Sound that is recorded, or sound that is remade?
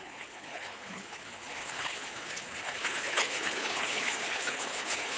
remade